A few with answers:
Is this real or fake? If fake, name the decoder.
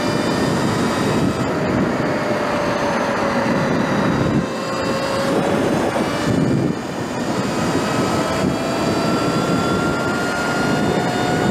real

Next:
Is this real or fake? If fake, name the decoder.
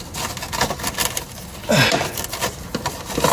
real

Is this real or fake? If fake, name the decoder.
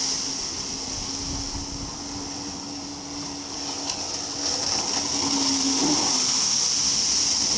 real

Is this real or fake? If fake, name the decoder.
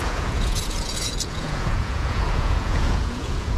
fake, vocoder, Vocos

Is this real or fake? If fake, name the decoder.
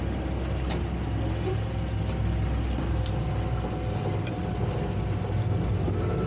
real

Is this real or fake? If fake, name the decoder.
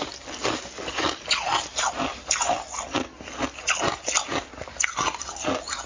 real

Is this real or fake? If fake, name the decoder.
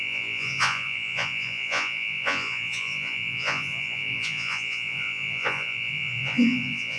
fake, vocoder, Vocos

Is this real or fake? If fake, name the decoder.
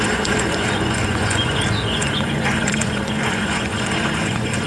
fake, vocoder, Vocos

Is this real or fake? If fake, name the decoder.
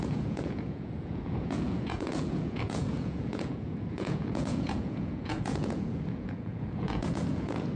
fake, vocoder, Vocos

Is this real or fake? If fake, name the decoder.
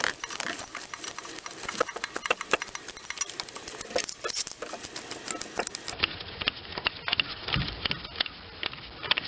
real